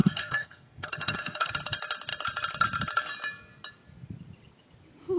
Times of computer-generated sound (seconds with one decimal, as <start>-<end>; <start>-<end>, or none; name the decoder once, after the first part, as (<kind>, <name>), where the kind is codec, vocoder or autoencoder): 0.0-1.5 (codec, SNAC)